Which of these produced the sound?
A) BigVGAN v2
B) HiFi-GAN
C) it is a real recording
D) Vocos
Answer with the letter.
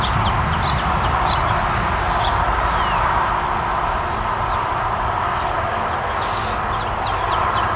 C